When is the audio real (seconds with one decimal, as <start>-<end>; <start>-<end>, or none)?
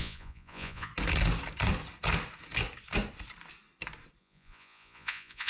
0.9-4.2